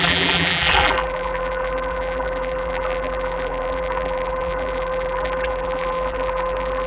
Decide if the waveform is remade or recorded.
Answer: remade